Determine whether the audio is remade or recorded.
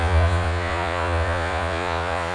remade